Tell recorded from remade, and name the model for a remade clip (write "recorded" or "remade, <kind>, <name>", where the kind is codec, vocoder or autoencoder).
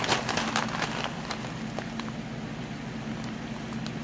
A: recorded